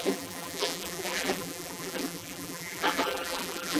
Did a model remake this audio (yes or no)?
yes